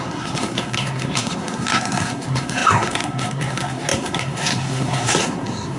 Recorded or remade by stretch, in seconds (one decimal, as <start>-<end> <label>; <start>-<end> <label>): 0.0-5.8 remade